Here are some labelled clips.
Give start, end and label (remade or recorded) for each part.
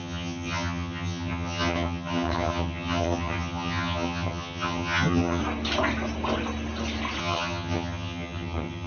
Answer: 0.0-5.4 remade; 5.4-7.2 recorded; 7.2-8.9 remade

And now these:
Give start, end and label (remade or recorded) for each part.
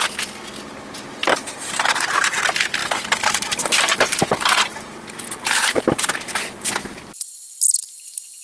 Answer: 0.0-1.2 recorded; 1.2-2.4 remade; 2.4-2.8 recorded; 2.8-6.7 remade; 6.7-8.4 recorded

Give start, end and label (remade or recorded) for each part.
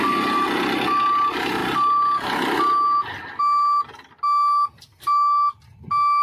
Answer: 0.0-6.2 recorded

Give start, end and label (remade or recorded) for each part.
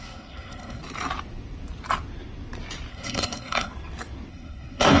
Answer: 0.0-0.8 remade; 0.8-2.9 recorded; 2.9-3.7 remade; 3.7-4.3 recorded; 4.3-5.0 remade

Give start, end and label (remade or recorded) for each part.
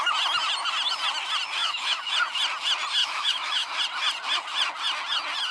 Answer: 0.0-1.6 recorded; 1.6-2.1 remade; 2.1-3.0 recorded; 3.0-3.8 remade; 3.8-5.5 recorded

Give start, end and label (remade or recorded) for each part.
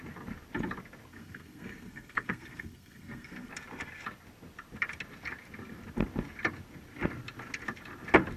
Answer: 0.0-1.1 recorded; 1.1-3.5 remade; 3.5-8.4 recorded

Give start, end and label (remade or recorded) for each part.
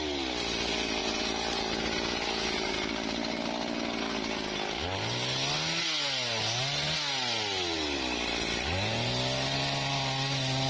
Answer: 0.0-1.0 recorded; 1.0-2.7 remade; 2.7-10.7 recorded